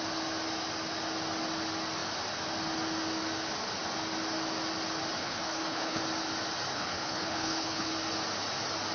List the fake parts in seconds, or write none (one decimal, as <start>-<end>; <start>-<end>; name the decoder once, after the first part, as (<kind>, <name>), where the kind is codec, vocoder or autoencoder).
5.2-6.0 (codec, HILCodec); 6.7-7.9